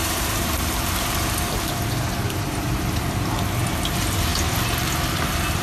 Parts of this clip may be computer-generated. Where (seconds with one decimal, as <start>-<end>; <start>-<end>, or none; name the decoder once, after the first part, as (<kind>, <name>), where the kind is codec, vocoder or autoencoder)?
0.0-3.4 (vocoder, BigVGAN v2)